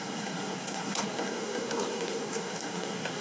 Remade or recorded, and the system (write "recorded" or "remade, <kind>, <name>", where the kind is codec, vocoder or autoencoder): remade, codec, SNAC